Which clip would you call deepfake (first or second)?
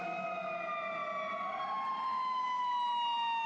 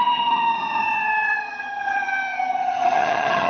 second